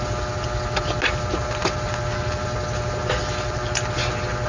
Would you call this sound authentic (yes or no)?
yes